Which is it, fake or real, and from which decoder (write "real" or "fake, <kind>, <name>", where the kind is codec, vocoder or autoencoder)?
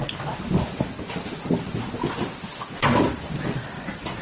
real